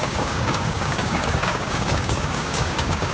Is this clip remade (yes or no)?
yes